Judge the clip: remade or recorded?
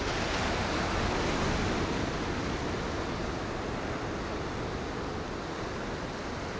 recorded